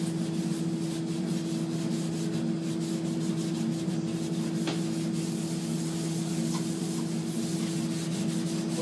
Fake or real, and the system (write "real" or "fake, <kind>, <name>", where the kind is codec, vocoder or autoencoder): real